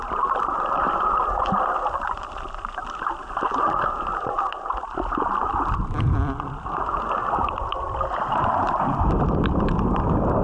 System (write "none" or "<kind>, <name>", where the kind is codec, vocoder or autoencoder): none